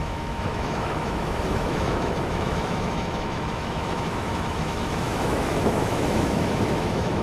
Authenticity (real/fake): fake